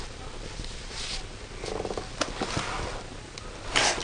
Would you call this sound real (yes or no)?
yes